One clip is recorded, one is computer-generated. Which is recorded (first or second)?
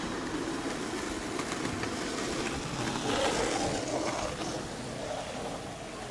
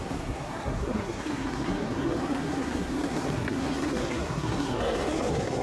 first